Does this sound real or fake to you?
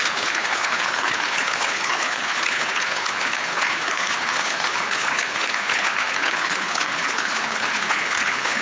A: fake